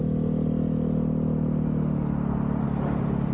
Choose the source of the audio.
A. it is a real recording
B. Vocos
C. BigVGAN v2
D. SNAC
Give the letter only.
A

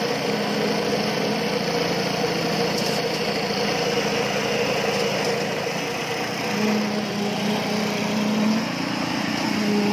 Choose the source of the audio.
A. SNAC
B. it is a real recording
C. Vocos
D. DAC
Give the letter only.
B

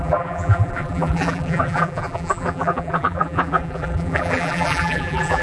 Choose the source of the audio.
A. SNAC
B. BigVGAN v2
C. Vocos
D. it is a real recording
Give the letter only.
B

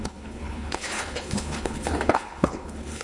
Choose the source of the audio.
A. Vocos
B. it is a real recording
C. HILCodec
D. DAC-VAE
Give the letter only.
C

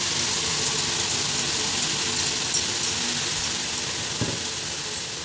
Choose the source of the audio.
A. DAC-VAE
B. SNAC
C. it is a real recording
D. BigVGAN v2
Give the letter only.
C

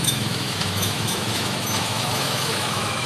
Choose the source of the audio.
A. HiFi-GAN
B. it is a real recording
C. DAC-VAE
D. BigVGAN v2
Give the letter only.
C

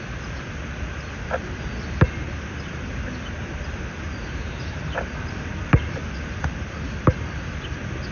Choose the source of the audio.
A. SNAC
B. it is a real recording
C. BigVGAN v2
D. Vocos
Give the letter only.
B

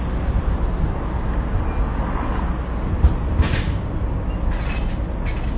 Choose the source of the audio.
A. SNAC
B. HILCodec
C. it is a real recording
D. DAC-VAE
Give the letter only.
C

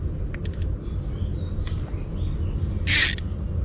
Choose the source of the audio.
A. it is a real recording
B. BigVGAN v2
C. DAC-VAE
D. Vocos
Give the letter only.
A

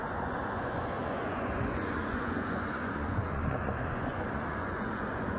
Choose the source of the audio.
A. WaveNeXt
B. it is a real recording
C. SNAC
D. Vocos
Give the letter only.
D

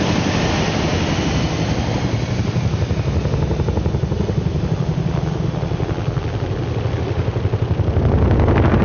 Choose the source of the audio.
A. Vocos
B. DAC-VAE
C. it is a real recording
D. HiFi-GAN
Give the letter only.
C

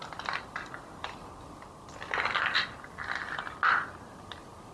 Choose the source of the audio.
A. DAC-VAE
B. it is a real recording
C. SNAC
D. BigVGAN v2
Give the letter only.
B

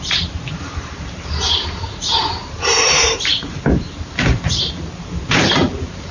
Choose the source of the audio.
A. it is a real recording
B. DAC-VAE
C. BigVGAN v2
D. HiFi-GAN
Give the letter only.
C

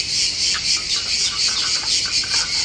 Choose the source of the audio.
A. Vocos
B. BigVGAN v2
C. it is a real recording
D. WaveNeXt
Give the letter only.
C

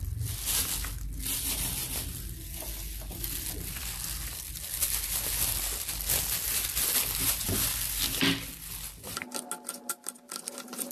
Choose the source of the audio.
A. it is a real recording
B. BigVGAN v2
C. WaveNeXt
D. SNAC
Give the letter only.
A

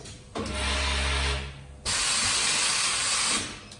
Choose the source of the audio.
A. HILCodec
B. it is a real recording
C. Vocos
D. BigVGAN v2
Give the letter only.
B